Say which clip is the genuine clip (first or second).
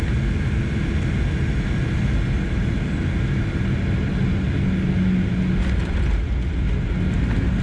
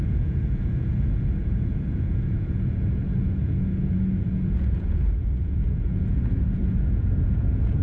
first